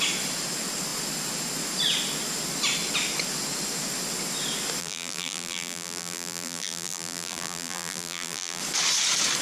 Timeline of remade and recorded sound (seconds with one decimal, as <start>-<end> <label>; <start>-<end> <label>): 0.0-4.8 recorded; 4.8-8.6 remade; 8.6-9.4 recorded